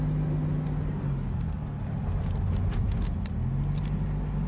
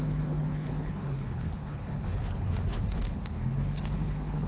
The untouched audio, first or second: first